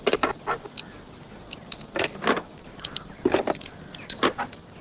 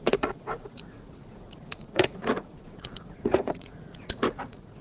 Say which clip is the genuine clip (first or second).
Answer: first